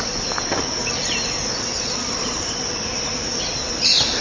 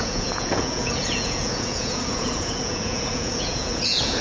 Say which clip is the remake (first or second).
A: second